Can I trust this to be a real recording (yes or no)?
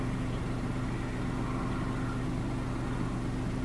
yes